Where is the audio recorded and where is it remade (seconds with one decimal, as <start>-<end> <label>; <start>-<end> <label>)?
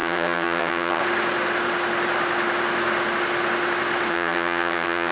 0.0-1.0 remade; 1.0-4.1 recorded; 4.1-5.1 remade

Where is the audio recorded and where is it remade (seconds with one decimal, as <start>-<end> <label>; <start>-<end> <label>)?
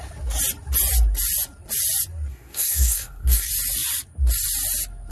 0.0-2.3 recorded; 2.3-3.5 remade; 3.5-5.1 recorded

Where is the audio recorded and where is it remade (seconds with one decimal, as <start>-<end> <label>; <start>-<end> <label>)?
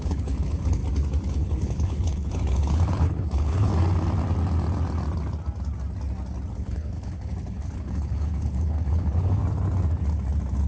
0.0-0.8 remade; 0.8-1.3 recorded; 1.3-3.7 remade; 3.7-6.5 recorded; 6.5-9.4 remade; 9.4-10.7 recorded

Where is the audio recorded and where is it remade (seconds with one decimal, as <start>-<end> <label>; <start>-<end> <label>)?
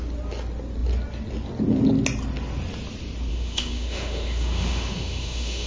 0.0-3.3 recorded; 3.3-5.7 remade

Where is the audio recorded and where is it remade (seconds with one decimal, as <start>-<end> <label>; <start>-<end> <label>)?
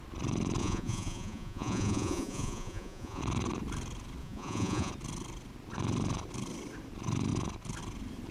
0.0-0.6 recorded; 0.6-3.2 remade; 3.2-4.2 recorded; 4.2-4.9 remade; 4.9-8.3 recorded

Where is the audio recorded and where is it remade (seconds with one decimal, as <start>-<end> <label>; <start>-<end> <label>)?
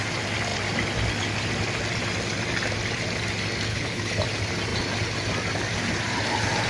0.0-3.7 recorded; 3.7-4.2 remade; 4.2-6.7 recorded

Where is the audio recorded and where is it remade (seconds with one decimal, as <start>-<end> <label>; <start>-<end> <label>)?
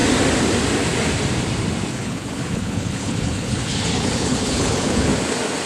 0.0-1.9 recorded; 1.9-5.1 remade; 5.1-5.7 recorded